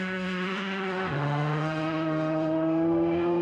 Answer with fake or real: fake